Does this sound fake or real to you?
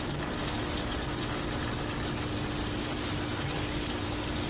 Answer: real